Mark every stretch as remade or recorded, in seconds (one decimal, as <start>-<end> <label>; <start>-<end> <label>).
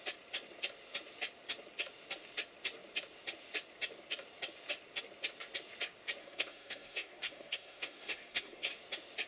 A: 0.0-6.2 recorded; 6.2-8.7 remade; 8.7-9.3 recorded